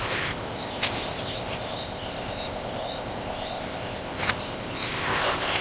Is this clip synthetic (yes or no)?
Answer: yes